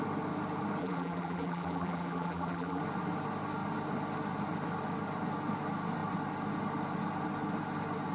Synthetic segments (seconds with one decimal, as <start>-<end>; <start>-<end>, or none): 0.8-2.8